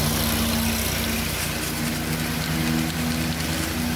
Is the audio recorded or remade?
recorded